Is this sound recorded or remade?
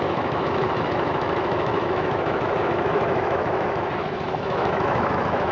remade